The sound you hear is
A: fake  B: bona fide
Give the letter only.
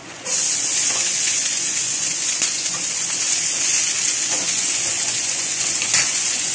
A